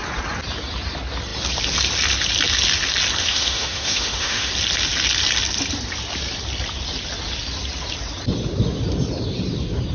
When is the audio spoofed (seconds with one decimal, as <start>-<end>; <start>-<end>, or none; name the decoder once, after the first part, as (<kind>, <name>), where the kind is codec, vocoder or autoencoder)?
3.2-4.5 (autoencoder, DAC-VAE)